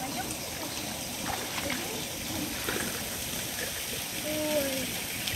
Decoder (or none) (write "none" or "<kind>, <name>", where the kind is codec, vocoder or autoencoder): none